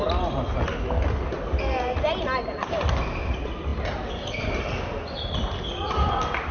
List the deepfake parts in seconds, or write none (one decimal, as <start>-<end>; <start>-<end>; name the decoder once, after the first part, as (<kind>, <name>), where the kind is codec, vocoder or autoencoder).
none